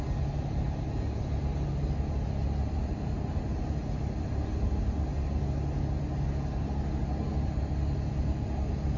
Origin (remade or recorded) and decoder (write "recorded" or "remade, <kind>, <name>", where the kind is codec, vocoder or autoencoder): recorded